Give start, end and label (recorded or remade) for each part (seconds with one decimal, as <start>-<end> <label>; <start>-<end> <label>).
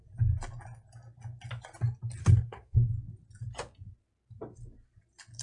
0.0-2.2 recorded; 2.2-2.9 remade; 2.9-5.4 recorded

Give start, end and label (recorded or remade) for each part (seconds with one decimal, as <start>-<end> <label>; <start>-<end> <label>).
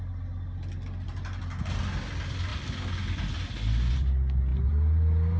0.0-5.4 recorded